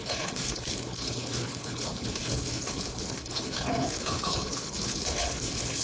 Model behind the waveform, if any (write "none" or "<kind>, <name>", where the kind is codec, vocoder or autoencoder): codec, HILCodec